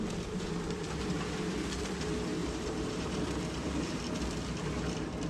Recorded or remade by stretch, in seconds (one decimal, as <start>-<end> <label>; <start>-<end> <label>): 0.0-2.4 recorded; 2.4-4.0 remade; 4.0-5.3 recorded